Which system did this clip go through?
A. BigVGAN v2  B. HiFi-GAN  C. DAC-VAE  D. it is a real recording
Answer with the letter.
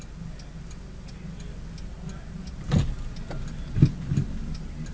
D